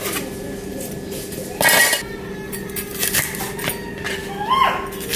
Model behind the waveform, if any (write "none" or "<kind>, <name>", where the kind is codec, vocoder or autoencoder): none